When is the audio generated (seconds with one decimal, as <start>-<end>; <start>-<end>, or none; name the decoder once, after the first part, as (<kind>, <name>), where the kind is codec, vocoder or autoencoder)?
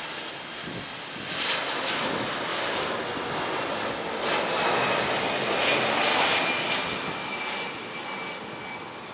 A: none